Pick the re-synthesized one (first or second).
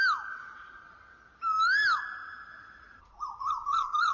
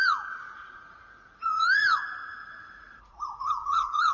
second